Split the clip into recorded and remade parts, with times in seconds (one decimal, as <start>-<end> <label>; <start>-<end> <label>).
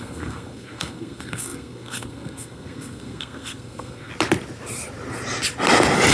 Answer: 0.0-4.1 remade; 4.1-6.1 recorded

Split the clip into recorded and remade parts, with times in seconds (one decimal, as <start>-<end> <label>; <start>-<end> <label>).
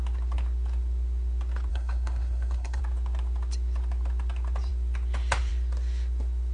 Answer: 0.0-1.7 recorded; 1.7-2.8 remade; 2.8-6.5 recorded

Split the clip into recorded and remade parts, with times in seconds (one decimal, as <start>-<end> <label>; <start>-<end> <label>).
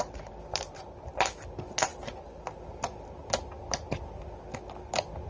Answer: 0.0-5.3 recorded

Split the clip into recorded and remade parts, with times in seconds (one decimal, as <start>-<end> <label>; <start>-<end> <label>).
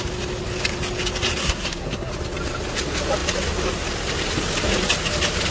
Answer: 0.0-1.4 recorded; 1.4-2.1 remade; 2.1-5.5 recorded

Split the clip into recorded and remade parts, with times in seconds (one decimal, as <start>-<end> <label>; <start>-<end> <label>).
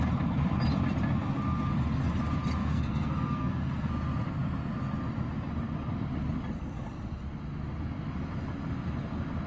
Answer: 0.0-2.6 recorded; 2.6-3.9 remade; 3.9-9.5 recorded